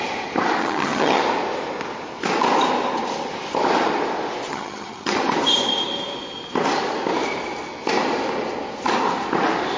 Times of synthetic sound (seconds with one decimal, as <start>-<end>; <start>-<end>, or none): 0.6-1.2; 4.5-5.1